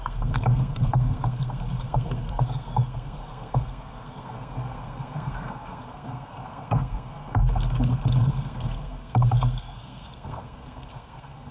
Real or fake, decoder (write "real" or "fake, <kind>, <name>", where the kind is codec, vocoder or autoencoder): fake, codec, SNAC